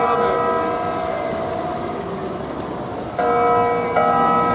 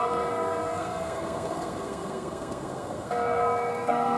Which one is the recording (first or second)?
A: first